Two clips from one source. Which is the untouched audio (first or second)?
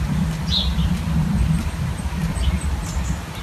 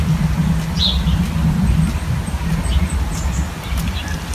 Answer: second